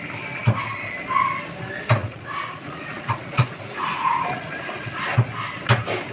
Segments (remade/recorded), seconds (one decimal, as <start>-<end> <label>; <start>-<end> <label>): 0.0-2.0 recorded; 2.0-5.0 remade; 5.0-6.1 recorded